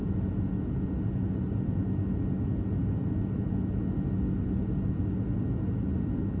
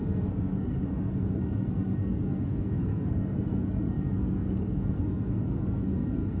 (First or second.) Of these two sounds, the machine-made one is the second